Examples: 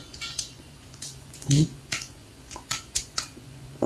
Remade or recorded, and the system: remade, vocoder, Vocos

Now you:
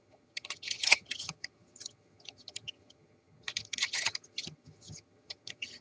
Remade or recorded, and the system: remade, vocoder, HiFi-GAN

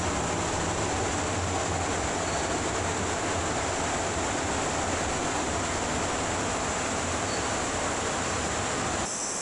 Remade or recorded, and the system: recorded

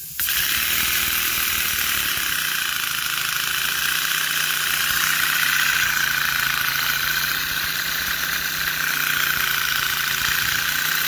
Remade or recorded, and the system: recorded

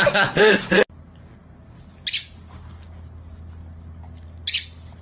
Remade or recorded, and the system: recorded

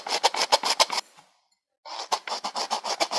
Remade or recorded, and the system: recorded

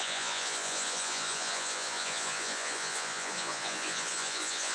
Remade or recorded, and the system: remade, vocoder, Vocos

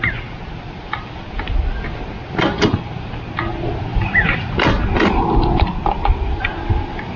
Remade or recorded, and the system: recorded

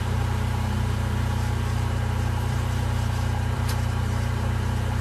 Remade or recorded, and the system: remade, vocoder, BigVGAN v2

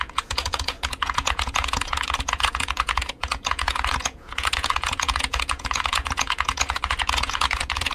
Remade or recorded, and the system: remade, vocoder, Vocos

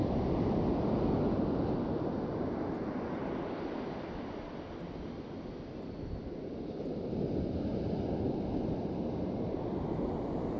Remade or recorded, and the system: recorded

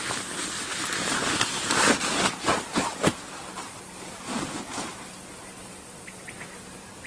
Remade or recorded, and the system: recorded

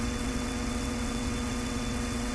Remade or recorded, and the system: remade, vocoder, WaveNeXt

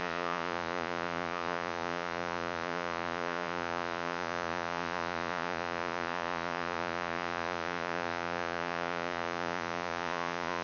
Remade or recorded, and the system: remade, vocoder, Vocos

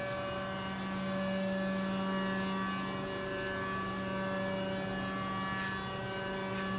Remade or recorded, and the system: recorded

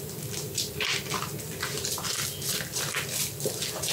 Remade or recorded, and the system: recorded